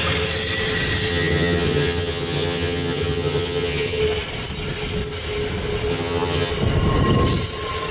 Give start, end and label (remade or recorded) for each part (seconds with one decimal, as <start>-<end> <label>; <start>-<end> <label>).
0.0-1.1 recorded; 1.1-4.0 remade; 4.0-5.9 recorded; 5.9-6.5 remade; 6.5-7.9 recorded